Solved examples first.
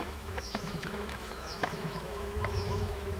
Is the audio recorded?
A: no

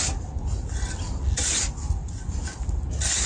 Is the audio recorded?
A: yes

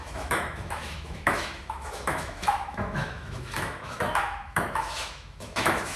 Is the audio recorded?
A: no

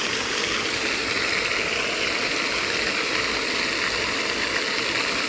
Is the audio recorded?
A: yes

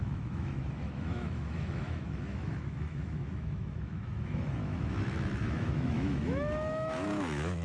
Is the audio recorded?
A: no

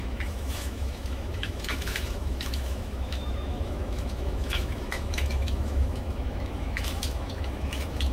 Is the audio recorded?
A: no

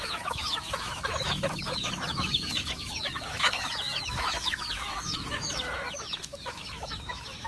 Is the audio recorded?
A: no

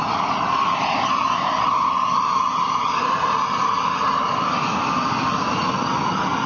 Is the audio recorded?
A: yes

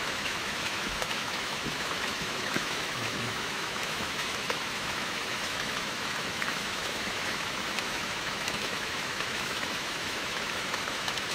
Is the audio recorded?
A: no